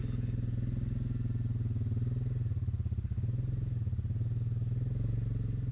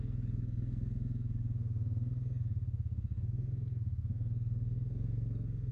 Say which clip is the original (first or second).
first